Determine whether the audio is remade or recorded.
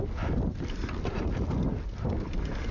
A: recorded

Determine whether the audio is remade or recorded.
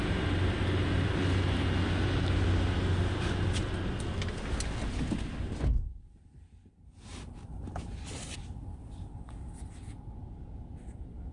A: recorded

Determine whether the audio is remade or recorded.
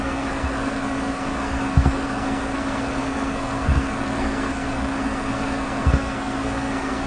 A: remade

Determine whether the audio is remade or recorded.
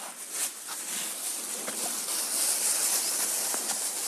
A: recorded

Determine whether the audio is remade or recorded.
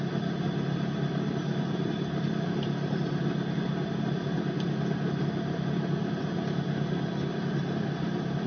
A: recorded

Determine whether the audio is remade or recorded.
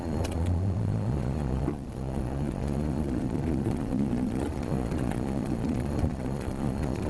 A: remade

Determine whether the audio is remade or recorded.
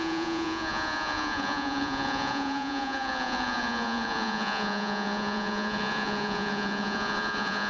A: remade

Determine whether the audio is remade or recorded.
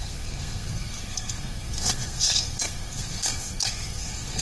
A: remade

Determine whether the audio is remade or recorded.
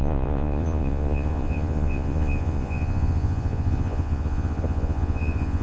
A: remade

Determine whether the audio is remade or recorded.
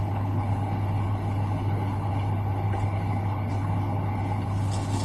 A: remade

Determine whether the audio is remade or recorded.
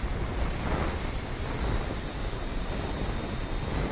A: remade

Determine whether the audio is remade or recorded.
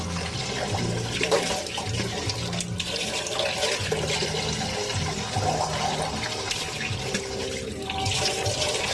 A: recorded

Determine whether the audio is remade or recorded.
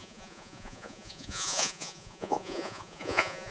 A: remade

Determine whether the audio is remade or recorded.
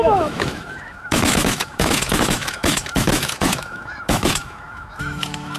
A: remade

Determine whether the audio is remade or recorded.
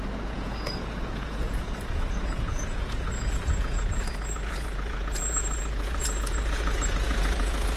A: remade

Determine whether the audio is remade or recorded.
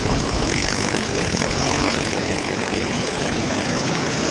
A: remade